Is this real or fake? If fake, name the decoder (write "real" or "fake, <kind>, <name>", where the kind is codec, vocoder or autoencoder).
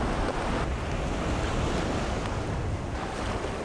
real